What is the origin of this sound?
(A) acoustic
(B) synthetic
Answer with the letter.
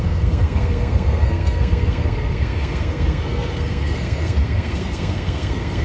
B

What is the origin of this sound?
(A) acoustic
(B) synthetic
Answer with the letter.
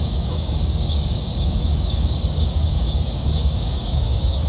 B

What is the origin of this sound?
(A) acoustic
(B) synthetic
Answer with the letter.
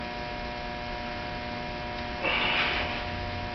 A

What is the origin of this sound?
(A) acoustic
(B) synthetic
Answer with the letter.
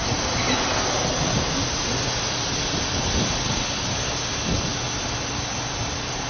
A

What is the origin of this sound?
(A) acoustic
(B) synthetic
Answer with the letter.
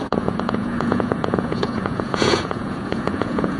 B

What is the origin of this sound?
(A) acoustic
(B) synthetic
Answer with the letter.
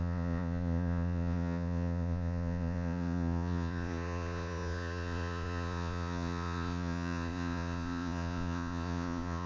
B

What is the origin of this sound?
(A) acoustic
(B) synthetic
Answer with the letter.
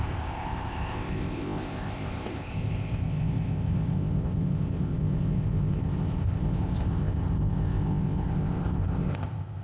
B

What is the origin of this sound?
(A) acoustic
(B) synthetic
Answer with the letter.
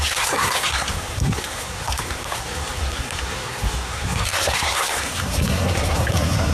B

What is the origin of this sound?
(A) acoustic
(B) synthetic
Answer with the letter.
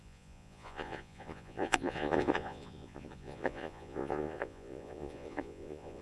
B